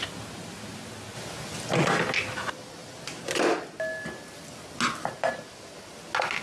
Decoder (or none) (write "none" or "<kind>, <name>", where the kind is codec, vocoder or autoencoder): none